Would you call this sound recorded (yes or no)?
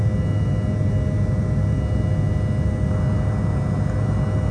yes